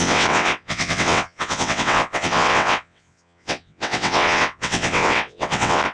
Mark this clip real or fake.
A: fake